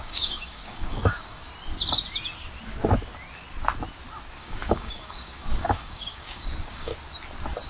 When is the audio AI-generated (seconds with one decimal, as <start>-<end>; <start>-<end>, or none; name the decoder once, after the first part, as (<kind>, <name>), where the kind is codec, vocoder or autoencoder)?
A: 0.0-1.5 (codec, DAC); 4.4-6.9